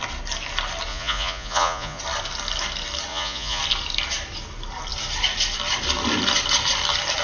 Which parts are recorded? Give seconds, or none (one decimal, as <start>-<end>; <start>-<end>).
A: 0.0-0.9; 2.0-3.1; 3.6-7.2